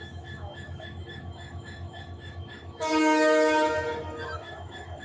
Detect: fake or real fake